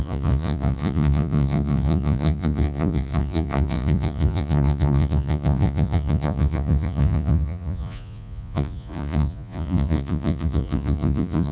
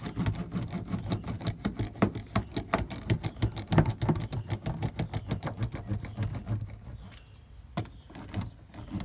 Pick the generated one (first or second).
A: first